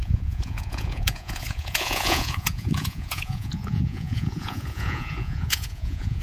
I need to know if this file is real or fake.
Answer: fake